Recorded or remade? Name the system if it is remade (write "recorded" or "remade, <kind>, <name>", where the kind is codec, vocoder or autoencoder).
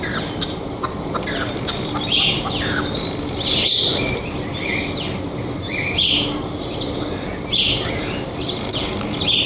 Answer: remade, vocoder, BigVGAN v2